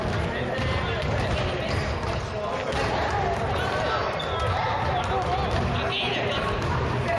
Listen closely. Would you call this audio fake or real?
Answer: real